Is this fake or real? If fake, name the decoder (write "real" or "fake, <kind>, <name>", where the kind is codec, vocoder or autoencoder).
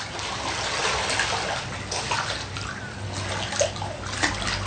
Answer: real